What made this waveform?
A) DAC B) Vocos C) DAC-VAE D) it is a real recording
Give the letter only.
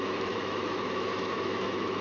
C